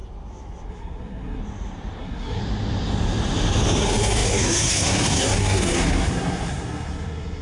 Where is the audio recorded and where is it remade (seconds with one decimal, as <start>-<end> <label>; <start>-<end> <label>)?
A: 0.0-0.7 recorded; 0.7-1.4 remade; 1.4-2.0 recorded; 2.0-2.4 remade; 2.4-3.8 recorded; 3.8-7.4 remade